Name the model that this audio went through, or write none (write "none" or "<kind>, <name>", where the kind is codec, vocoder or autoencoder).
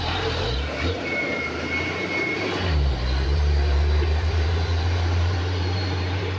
vocoder, BigVGAN v2